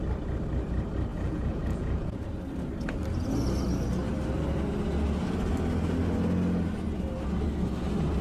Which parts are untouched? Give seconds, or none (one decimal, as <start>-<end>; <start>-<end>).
0.0-1.1; 2.2-8.2